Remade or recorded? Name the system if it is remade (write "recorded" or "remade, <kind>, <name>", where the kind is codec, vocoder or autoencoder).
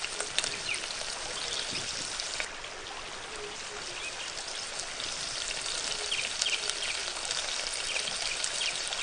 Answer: recorded